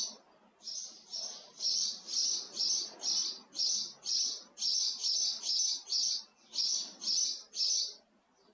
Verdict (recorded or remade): recorded